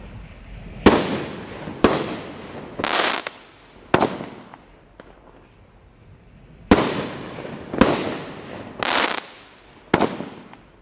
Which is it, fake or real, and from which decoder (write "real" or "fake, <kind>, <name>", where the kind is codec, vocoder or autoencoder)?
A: real